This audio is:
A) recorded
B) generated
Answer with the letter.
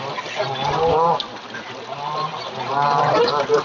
A